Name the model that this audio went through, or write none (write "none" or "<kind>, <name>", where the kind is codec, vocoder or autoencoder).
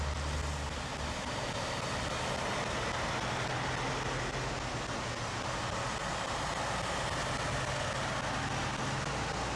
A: none